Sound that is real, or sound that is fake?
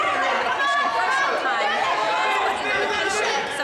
real